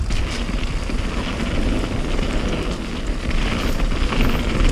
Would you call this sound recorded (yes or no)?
yes